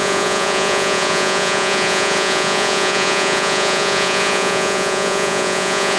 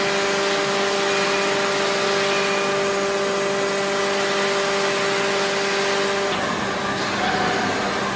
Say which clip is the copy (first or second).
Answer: first